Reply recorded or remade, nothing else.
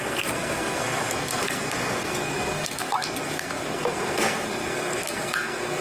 remade